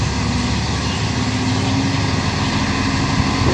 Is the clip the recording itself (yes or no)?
yes